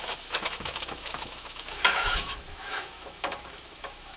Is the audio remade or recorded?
remade